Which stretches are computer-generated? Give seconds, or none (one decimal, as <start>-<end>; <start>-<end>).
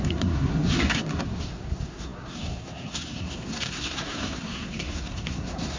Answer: 0.0-5.8